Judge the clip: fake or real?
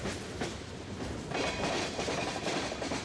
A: fake